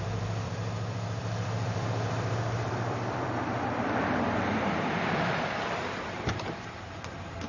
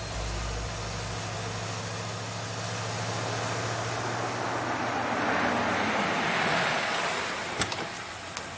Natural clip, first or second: second